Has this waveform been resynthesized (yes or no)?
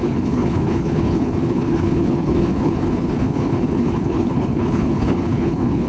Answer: yes